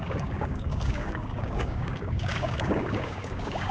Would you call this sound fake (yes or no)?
yes